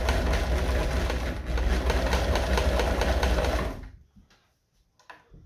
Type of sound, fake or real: real